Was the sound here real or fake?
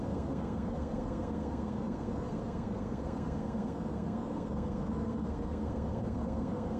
fake